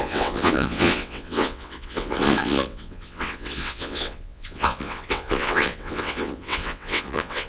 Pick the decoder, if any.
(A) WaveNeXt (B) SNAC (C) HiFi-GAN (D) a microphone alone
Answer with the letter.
A